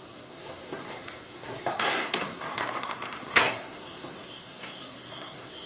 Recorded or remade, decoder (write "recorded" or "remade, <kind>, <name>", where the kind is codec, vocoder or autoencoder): remade, codec, SNAC